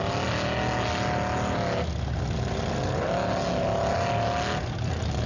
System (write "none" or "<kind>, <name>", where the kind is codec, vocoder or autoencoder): none